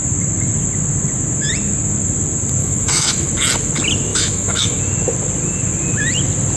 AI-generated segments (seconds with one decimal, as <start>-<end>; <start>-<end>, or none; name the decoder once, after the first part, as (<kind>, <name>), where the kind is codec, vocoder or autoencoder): 2.6-3.3 (autoencoder, DAC-VAE); 4.1-4.8